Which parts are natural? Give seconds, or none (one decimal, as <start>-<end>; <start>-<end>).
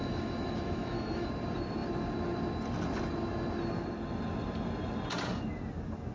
1.3-6.1